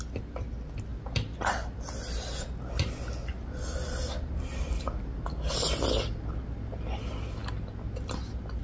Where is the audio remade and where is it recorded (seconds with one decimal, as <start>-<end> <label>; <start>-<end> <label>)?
0.0-8.6 recorded